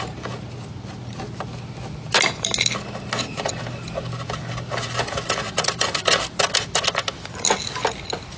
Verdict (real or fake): real